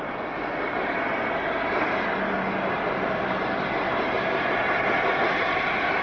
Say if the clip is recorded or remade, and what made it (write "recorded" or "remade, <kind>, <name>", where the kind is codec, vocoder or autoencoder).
recorded